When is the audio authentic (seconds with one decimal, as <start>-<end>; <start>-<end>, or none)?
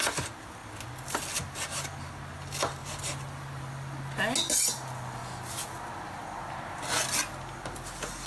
0.0-2.8; 3.7-8.3